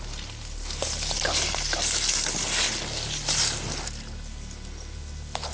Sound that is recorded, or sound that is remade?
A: recorded